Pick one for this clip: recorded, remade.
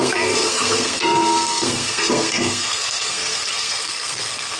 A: remade